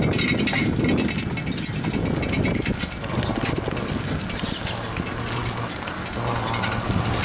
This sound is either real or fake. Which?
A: real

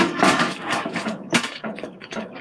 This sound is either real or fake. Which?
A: fake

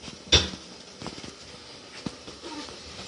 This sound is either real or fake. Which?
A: real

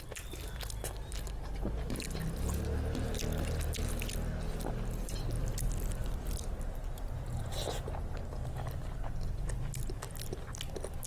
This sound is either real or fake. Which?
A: real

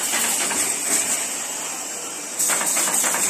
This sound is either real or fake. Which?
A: real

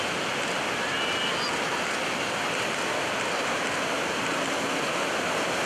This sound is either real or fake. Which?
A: real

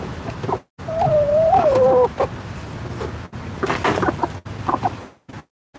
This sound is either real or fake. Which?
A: real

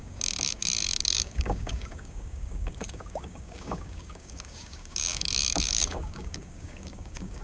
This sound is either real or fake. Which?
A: fake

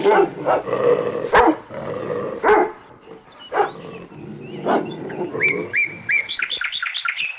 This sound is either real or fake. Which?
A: real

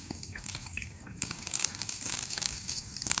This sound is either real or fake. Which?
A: fake